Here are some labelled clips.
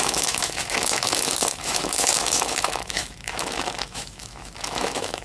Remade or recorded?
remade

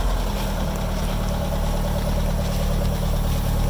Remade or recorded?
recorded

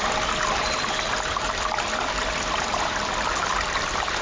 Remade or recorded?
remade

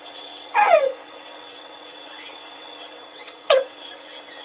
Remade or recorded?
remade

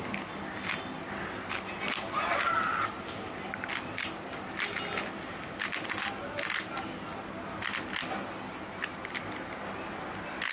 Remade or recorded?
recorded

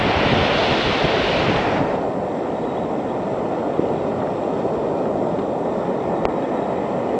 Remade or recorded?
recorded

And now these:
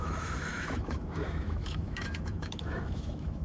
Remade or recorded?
remade